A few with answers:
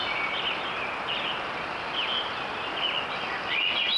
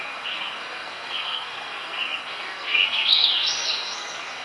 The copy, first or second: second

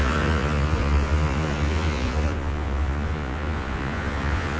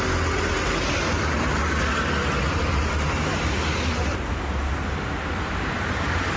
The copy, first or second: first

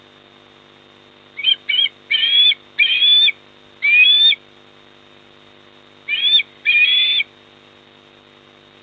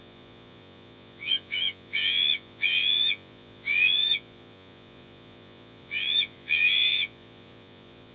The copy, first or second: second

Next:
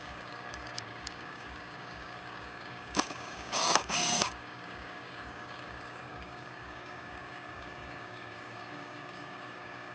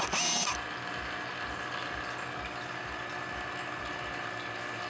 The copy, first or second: first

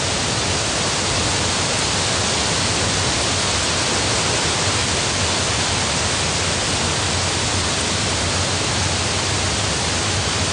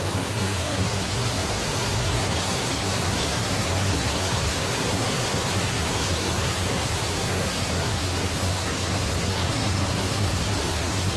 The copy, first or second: second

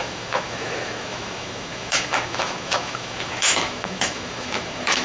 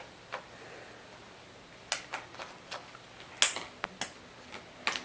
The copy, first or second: first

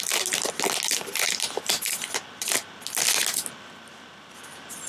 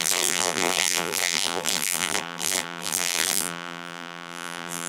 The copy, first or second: second